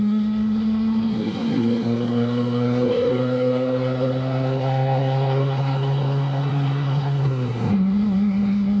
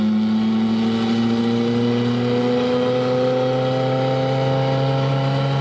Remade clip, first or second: first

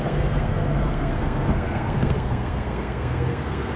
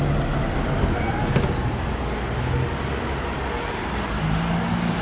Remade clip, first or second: first